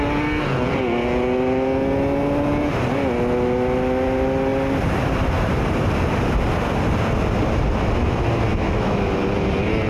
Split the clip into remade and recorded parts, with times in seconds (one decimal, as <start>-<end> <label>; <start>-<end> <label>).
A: 0.0-8.5 recorded; 8.5-9.1 remade; 9.1-9.9 recorded